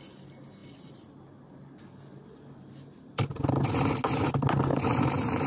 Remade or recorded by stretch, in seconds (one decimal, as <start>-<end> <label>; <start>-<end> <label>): 0.0-4.7 recorded; 4.7-5.5 remade